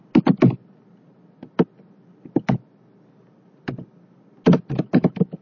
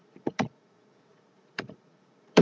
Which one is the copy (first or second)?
second